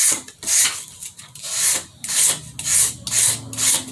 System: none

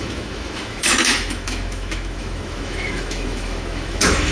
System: autoencoder, DAC-VAE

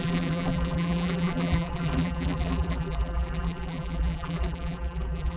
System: vocoder, BigVGAN v2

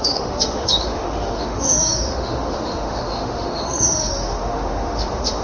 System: autoencoder, DAC-VAE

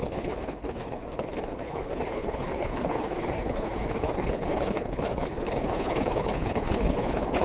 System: codec, HILCodec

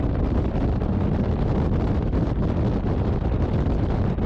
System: none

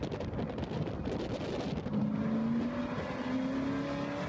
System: none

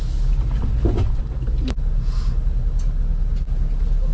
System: none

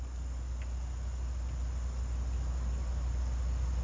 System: none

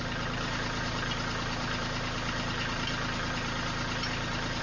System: none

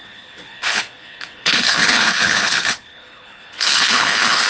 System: codec, HILCodec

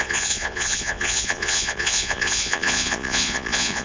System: vocoder, Vocos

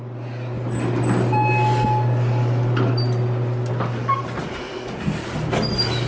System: none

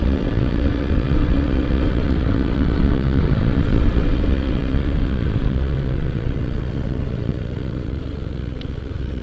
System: vocoder, WaveNeXt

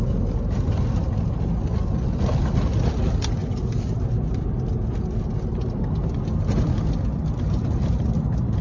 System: none